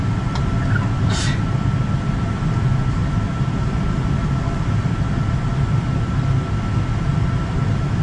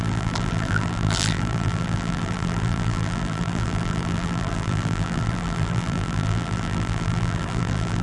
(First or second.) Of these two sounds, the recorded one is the first